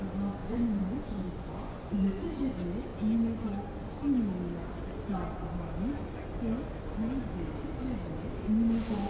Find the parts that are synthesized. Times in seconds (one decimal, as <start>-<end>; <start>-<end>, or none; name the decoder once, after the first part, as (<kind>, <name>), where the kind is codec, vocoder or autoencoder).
0.4-2.5 (vocoder, Vocos)